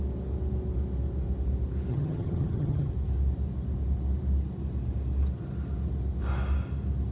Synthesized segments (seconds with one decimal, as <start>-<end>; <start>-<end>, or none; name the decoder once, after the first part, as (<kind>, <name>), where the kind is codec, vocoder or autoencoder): 1.9-2.9 (vocoder, HiFi-GAN)